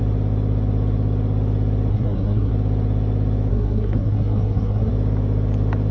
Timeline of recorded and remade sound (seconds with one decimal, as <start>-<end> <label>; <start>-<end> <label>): 0.0-1.9 recorded; 1.9-2.5 remade; 2.5-3.5 recorded; 3.5-4.9 remade; 4.9-5.9 recorded